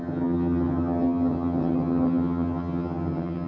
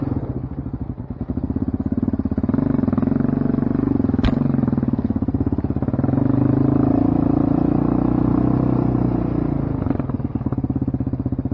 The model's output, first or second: first